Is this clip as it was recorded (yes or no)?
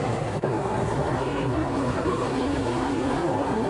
no